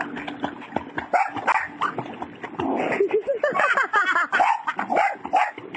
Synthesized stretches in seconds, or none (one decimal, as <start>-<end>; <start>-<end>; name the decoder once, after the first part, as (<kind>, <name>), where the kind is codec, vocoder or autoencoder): none